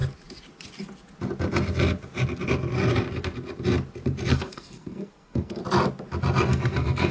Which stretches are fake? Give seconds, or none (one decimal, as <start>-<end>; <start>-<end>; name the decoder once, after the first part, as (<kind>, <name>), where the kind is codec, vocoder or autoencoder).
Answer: 4.3-5.6 (codec, SNAC); 6.5-7.1